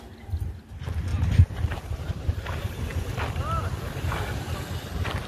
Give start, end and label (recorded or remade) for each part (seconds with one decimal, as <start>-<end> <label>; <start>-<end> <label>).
0.0-1.1 recorded; 1.1-2.1 remade; 2.1-5.3 recorded